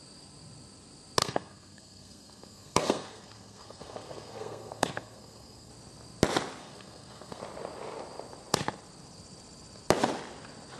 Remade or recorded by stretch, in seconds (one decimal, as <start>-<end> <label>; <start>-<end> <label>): 0.0-1.2 recorded; 1.2-5.7 remade; 5.7-6.6 recorded; 6.6-7.4 remade; 7.4-10.8 recorded